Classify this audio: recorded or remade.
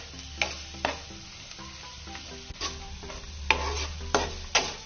recorded